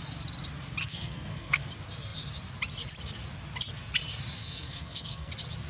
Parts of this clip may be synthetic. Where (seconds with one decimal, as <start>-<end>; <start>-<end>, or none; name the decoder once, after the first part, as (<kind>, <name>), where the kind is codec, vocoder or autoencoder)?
0.8-1.7 (codec, SNAC); 4.4-5.3